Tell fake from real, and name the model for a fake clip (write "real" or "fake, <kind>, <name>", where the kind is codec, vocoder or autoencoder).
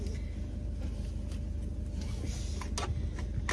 real